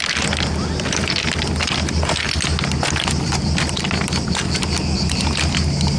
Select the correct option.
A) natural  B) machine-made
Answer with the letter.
A